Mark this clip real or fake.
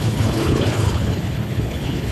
fake